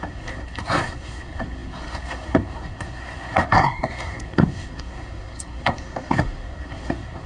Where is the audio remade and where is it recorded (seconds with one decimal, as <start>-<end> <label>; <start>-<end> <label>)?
0.0-7.3 remade